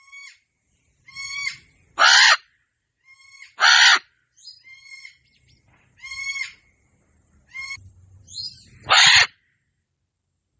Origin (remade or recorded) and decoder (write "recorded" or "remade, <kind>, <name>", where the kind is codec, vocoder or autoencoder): recorded